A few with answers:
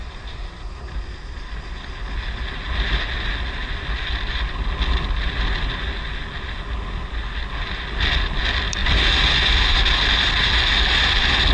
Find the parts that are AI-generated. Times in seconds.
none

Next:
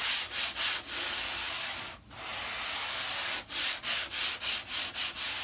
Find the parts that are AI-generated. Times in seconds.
none

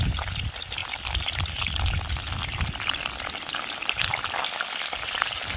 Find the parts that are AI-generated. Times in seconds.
none